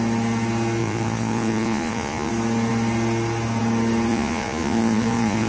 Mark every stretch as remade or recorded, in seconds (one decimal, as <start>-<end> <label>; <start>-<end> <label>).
0.0-0.8 recorded; 0.8-2.3 remade; 2.3-4.1 recorded; 4.1-5.5 remade